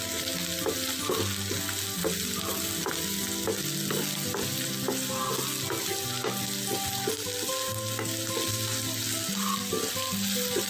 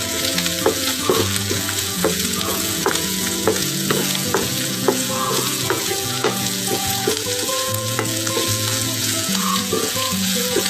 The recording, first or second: first